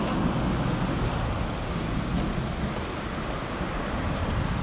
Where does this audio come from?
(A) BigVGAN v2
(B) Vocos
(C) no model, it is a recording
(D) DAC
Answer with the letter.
C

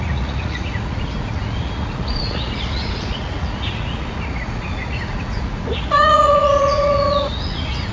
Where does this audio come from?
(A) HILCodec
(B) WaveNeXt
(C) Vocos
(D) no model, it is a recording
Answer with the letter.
C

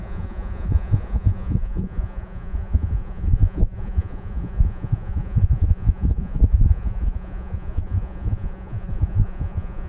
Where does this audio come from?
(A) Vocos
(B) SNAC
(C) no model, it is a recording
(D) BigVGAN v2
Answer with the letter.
A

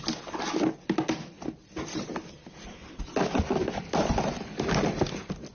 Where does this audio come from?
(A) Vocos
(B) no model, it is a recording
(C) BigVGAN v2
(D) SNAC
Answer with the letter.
B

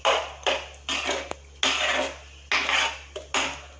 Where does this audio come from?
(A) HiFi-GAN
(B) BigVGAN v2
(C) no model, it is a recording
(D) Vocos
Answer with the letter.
C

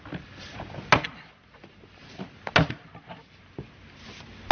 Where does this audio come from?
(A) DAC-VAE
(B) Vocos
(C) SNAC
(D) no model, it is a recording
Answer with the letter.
D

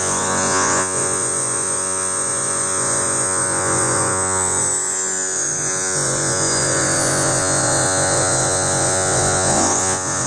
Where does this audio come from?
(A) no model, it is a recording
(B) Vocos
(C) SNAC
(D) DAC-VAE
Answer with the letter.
B